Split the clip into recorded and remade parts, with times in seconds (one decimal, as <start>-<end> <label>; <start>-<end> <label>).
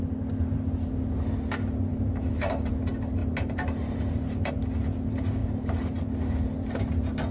0.0-1.9 recorded; 1.9-2.7 remade; 2.7-3.2 recorded; 3.2-4.5 remade; 4.5-5.4 recorded; 5.4-6.0 remade; 6.0-7.3 recorded